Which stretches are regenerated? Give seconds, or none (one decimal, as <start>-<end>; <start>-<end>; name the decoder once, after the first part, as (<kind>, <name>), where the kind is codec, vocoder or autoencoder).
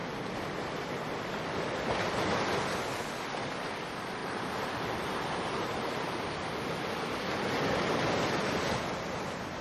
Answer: 4.2-6.8 (vocoder, BigVGAN v2)